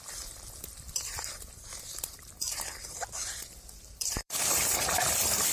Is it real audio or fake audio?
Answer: fake